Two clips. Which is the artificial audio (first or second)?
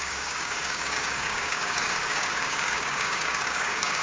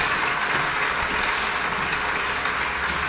first